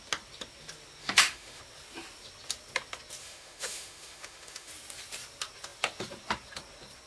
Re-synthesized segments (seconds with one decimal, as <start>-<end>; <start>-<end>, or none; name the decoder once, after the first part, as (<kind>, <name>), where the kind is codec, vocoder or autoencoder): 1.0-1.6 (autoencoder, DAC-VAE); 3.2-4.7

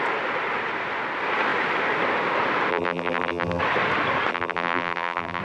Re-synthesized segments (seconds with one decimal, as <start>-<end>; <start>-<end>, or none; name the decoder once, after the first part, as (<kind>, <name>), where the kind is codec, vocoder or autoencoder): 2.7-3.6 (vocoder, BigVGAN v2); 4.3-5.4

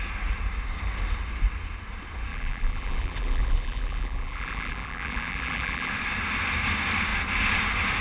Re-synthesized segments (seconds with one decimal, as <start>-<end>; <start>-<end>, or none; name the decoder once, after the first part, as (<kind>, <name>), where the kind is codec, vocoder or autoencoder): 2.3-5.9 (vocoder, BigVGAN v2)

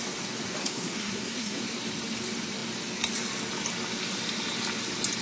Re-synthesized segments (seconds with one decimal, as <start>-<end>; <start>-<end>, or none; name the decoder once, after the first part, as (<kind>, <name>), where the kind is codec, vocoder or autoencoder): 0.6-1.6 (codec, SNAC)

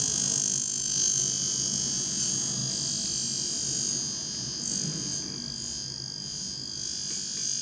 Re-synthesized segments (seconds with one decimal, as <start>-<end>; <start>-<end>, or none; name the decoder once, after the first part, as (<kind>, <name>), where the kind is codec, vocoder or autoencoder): none

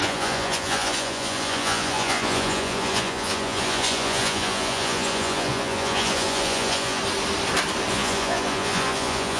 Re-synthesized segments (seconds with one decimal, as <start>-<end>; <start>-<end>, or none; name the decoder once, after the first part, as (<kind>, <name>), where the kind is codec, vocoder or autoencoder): 0.0-7.0 (vocoder, Vocos); 7.9-9.4

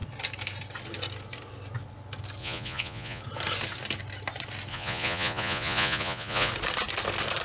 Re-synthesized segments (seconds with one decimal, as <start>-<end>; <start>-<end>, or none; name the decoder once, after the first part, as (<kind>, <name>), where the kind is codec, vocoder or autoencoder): 2.4-3.2 (vocoder, Vocos); 4.7-6.5

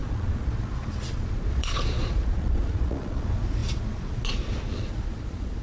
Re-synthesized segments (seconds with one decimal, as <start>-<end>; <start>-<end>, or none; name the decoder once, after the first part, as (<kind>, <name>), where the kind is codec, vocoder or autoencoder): 0.0-5.6 (vocoder, Vocos)